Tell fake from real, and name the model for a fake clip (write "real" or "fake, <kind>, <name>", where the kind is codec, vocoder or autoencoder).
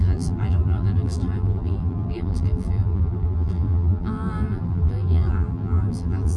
fake, vocoder, BigVGAN v2